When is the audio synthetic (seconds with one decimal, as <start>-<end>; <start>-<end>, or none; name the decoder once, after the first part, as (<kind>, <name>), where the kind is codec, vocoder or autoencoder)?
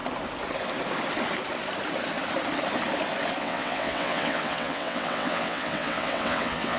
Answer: 3.4-6.8 (vocoder, WaveNeXt)